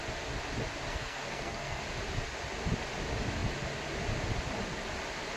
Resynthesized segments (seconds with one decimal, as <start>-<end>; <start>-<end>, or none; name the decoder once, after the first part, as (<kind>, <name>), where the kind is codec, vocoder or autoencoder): 0.9-1.8 (codec, SNAC)